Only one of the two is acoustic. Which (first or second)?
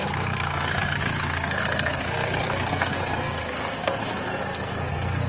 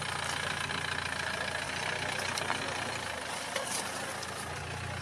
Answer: second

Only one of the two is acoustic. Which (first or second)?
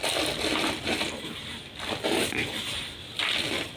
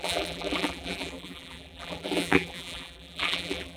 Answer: first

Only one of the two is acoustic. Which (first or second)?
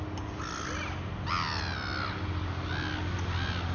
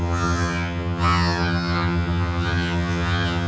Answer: first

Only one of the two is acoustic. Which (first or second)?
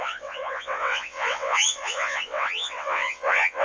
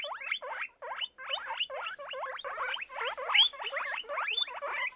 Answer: second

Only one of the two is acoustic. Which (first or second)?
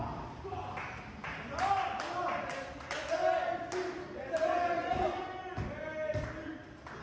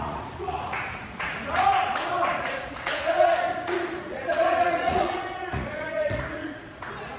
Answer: first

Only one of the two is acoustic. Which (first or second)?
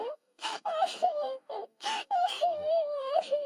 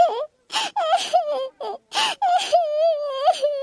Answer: second